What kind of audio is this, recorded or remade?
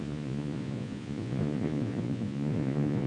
remade